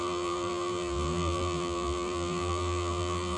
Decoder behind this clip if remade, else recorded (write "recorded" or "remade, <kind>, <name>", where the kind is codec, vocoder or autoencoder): remade, vocoder, BigVGAN v2